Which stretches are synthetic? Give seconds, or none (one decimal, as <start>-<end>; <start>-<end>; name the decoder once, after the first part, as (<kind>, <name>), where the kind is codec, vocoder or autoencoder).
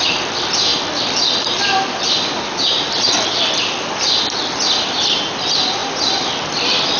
0.7-3.6 (vocoder, BigVGAN v2); 5.8-6.3